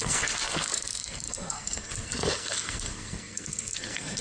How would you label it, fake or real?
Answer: fake